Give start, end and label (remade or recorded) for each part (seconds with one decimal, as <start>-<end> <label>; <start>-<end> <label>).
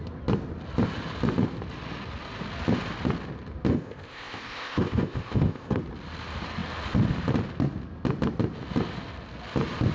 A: 0.0-3.7 recorded; 3.7-5.8 remade; 5.8-9.9 recorded